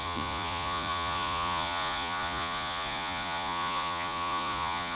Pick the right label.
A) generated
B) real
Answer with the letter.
A